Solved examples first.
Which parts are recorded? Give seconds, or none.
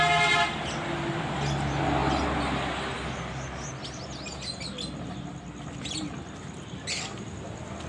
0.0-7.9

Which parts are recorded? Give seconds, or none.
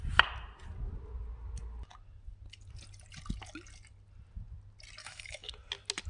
0.0-5.0; 5.5-6.1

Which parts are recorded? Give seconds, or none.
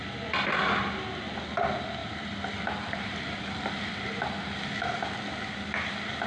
0.0-6.3